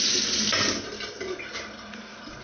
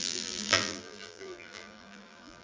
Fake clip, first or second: second